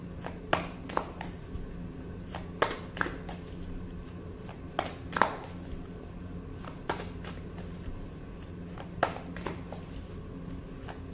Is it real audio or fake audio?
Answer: real